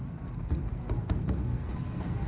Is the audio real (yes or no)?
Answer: no